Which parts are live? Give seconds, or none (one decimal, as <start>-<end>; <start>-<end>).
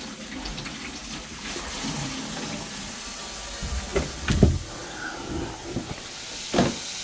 0.0-7.0